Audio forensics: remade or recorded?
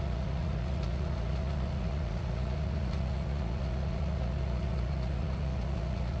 remade